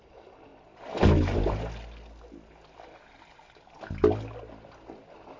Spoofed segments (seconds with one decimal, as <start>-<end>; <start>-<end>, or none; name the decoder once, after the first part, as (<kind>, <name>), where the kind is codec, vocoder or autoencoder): none